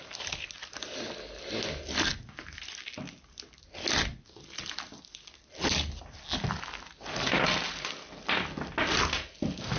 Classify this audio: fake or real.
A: real